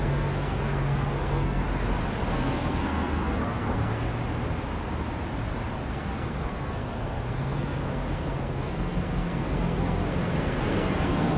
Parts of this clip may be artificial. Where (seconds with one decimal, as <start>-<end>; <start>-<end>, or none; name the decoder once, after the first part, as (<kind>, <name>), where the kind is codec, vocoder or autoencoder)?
0.0-1.6 (codec, SNAC); 2.3-4.1; 5.9-11.4